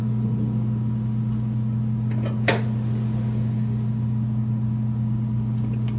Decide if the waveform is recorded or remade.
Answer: recorded